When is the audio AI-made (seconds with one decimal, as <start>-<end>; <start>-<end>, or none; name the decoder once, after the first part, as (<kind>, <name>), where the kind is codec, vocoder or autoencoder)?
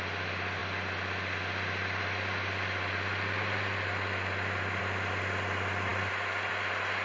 none